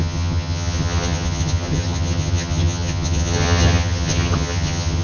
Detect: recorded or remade remade